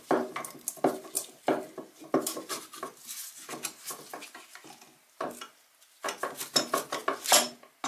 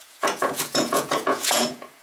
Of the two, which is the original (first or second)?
first